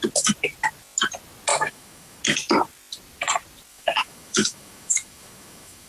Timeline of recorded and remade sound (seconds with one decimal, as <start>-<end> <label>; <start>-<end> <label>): 0.0-1.5 recorded; 1.5-2.2 remade; 2.2-3.7 recorded; 3.7-5.9 remade